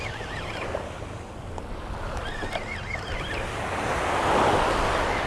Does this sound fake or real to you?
real